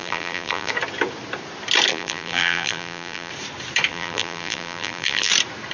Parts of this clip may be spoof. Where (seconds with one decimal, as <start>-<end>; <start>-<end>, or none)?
0.0-0.7; 1.9-3.3; 3.9-5.3